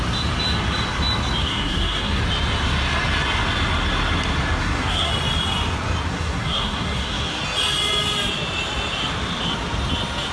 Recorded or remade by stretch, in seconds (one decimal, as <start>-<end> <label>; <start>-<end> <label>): 0.0-1.4 recorded; 1.4-2.2 remade; 2.2-4.6 recorded; 4.6-5.1 remade; 5.1-6.1 recorded; 6.1-7.4 remade; 7.4-10.3 recorded